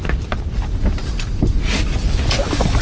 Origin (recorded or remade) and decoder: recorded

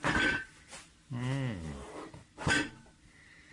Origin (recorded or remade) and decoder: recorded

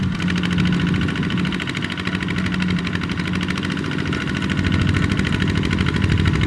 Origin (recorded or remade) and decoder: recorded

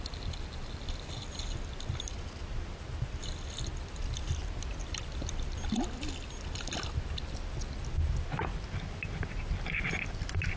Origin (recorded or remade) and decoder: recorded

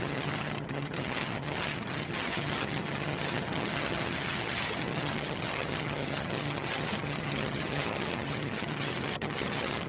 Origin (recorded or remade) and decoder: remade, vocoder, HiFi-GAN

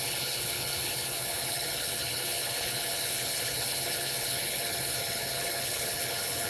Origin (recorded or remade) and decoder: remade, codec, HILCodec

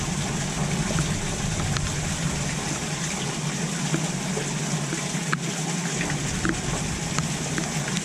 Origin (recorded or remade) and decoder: recorded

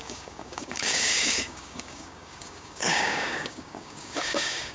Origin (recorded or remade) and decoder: remade, codec, DAC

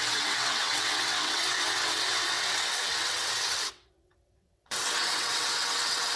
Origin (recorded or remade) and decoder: remade, vocoder, WaveNeXt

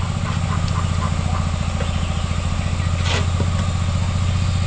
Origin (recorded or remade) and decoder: recorded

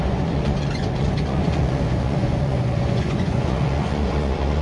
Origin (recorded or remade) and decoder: remade, vocoder, Vocos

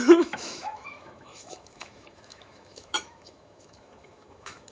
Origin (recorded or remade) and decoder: remade, autoencoder, DAC-VAE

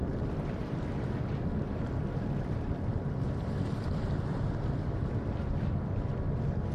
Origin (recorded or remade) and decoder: remade, vocoder, BigVGAN v2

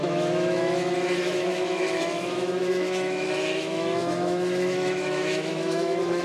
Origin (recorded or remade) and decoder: remade, autoencoder, DAC-VAE